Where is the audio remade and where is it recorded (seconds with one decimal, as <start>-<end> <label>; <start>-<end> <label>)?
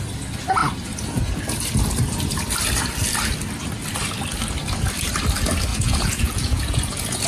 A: 0.0-5.7 recorded; 5.7-7.3 remade